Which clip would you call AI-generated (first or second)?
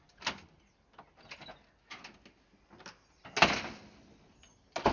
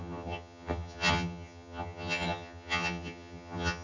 second